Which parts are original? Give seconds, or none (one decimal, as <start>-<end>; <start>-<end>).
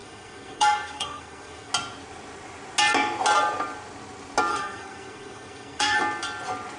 1.7-4.5; 6.0-6.8